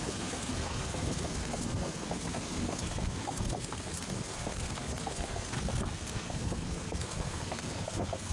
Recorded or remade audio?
remade